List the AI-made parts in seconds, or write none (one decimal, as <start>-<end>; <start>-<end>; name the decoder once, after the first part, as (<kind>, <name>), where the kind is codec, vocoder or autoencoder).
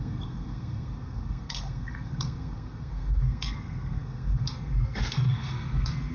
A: 0.0-6.1 (codec, SNAC)